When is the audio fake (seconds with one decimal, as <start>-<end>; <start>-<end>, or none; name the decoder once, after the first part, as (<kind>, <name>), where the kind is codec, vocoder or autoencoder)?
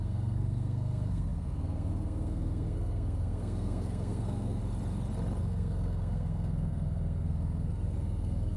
0.0-4.6 (codec, SNAC); 5.4-8.6